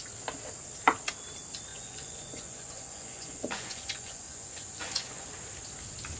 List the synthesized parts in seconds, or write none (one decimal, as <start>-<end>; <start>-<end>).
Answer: 1.7-5.3